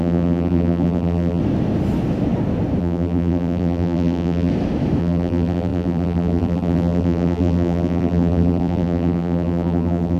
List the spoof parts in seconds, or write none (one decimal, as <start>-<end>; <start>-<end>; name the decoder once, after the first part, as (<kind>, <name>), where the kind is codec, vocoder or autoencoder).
0.0-1.4 (vocoder, BigVGAN v2); 2.8-4.5; 5.0-10.2